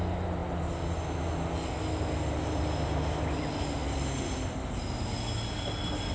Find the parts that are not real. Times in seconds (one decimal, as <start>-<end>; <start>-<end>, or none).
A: none